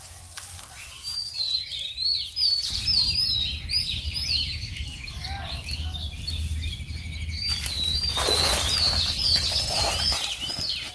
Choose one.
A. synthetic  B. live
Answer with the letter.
B